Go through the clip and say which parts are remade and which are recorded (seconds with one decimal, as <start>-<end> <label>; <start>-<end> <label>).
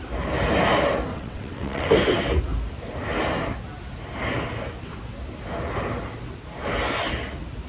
0.0-1.1 recorded; 1.1-1.9 remade; 1.9-7.7 recorded